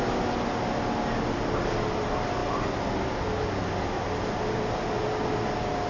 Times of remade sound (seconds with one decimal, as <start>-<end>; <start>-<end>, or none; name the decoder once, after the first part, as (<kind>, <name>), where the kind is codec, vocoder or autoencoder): none